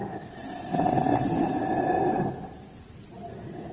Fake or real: real